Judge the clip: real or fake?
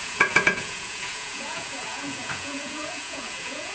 fake